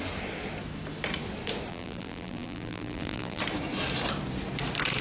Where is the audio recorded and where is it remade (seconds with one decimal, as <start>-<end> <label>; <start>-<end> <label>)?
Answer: 0.0-1.7 recorded; 1.7-3.4 remade; 3.4-5.0 recorded